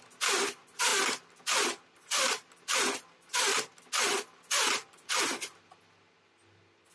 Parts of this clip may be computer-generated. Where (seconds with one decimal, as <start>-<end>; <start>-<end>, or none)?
none